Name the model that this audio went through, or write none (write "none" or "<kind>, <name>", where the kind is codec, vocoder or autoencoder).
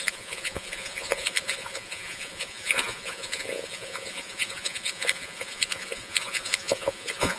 vocoder, Vocos